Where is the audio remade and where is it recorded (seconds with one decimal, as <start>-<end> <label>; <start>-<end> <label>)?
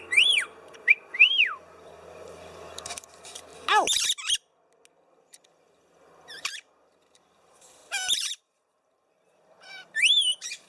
0.0-3.5 remade; 3.5-5.1 recorded; 5.1-10.7 remade